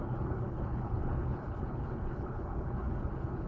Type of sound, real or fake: fake